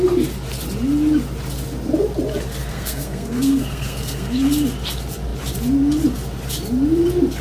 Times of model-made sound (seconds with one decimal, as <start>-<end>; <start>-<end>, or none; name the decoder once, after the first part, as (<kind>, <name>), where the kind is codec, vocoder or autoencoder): 2.7-4.4 (codec, SNAC)